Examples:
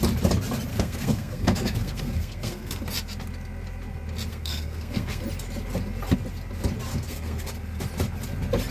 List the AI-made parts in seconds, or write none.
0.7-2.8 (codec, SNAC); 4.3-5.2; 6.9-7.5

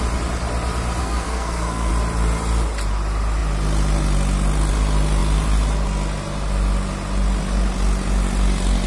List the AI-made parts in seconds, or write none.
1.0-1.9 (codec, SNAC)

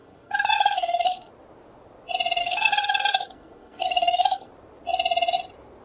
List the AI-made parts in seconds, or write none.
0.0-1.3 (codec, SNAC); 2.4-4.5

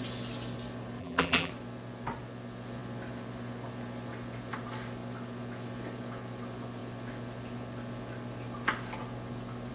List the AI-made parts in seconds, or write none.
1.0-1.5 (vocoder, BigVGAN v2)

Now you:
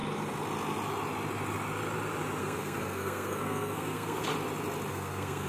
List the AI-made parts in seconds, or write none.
2.4-4.3 (codec, SNAC); 4.9-5.5

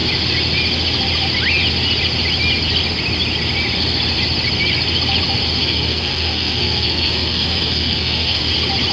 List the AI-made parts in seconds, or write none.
5.6-8.4 (codec, SNAC)

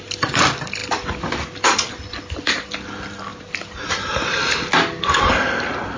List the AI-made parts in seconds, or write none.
none